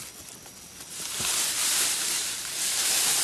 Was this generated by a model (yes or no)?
no